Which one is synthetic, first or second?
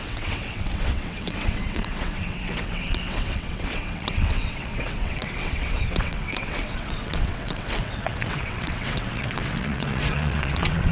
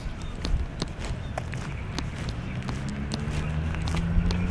first